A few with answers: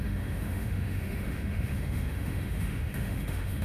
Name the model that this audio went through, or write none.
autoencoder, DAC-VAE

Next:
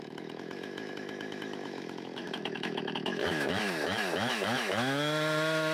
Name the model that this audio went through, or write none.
autoencoder, DAC-VAE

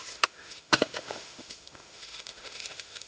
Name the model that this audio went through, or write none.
autoencoder, DAC-VAE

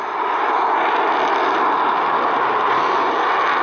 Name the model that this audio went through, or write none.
none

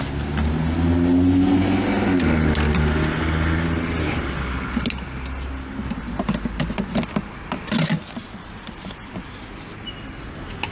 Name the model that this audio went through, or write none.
none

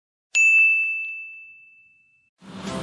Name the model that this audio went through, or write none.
none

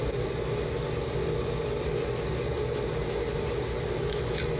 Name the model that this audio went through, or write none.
none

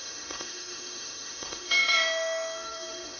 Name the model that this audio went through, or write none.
autoencoder, DAC-VAE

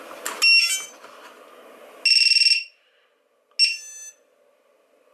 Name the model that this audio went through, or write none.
none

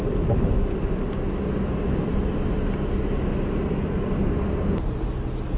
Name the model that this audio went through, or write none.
none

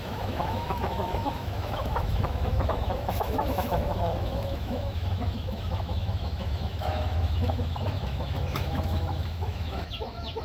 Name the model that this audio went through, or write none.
autoencoder, DAC-VAE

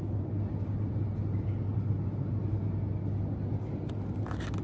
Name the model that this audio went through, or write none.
none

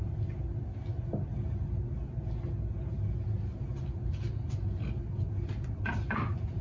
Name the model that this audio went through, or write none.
none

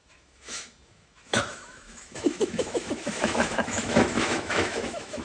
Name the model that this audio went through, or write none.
autoencoder, DAC-VAE